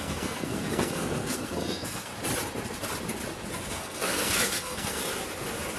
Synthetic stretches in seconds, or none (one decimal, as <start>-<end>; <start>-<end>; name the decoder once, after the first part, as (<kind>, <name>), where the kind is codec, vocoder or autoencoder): 0.0-2.1 (codec, SNAC); 3.7-5.0